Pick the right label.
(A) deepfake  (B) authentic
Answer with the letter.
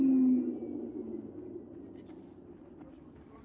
B